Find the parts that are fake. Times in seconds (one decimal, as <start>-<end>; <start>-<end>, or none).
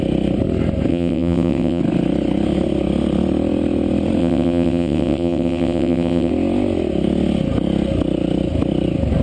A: 0.9-1.8; 4.2-6.3